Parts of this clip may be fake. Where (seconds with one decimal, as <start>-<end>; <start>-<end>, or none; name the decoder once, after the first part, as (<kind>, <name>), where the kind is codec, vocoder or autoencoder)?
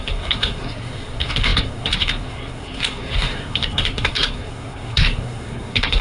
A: 0.0-6.0 (codec, SNAC)